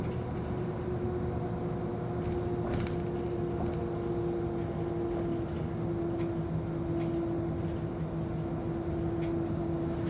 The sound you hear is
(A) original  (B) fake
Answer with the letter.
A